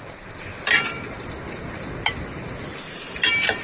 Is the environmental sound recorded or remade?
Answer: recorded